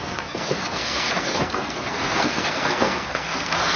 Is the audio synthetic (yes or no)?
yes